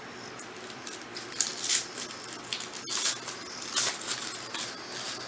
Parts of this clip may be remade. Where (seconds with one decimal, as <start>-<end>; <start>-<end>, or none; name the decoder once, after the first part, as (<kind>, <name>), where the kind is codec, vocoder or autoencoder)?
none